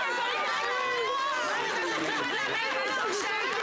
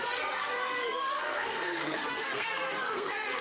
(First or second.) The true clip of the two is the first